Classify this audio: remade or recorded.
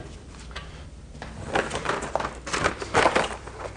remade